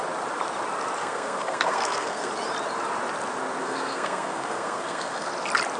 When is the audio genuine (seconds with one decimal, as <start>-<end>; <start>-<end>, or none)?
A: 0.0-1.0; 2.3-3.6; 5.3-5.8